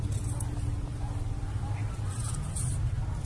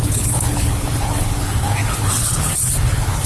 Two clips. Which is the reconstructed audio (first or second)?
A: second